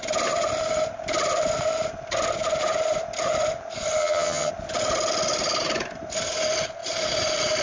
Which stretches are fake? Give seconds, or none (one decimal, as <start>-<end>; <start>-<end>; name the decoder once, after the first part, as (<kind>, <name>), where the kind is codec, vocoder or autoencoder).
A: 4.0-4.5 (vocoder, HiFi-GAN)